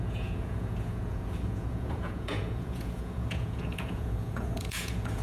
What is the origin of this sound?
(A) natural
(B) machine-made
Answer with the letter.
B